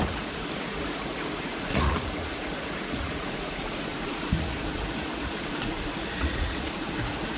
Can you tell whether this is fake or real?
fake